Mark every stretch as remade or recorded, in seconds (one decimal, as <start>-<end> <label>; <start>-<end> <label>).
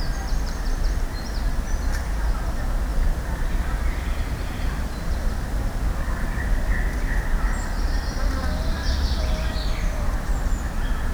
0.0-2.9 recorded; 2.9-6.7 remade; 6.7-11.1 recorded